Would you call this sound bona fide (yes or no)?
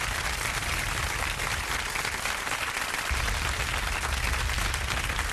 yes